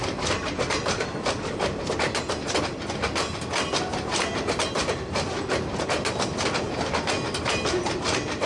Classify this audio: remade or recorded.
recorded